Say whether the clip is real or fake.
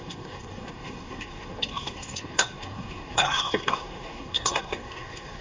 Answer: fake